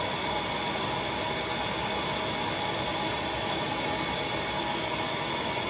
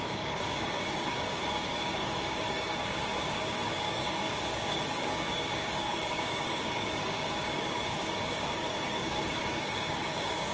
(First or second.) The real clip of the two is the first